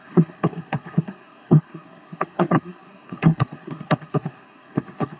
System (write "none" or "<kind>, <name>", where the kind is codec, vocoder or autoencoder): codec, SNAC